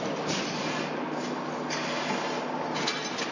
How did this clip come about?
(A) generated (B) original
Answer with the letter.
B